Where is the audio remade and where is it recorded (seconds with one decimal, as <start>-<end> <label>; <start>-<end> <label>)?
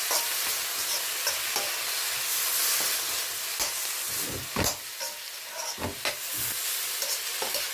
0.0-7.7 recorded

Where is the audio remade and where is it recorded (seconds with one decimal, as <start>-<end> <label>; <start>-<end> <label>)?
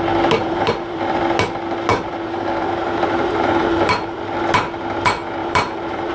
0.0-0.4 recorded; 0.4-1.2 remade; 1.2-1.9 recorded; 1.9-4.2 remade; 4.2-5.4 recorded; 5.4-6.1 remade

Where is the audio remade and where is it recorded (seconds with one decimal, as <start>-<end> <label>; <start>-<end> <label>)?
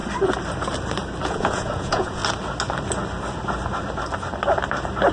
0.0-1.3 recorded; 1.3-2.2 remade; 2.2-5.1 recorded